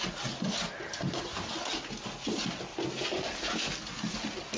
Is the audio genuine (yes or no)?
yes